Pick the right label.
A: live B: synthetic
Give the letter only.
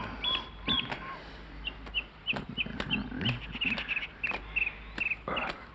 A